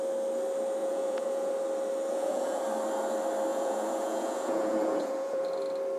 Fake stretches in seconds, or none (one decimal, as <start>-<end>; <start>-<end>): 0.8-1.5; 2.1-2.6; 3.5-5.4